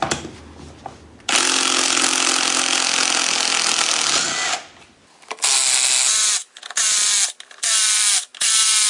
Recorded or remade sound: recorded